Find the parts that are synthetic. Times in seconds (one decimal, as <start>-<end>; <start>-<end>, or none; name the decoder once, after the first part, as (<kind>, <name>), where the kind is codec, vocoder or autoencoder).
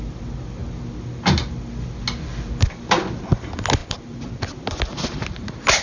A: none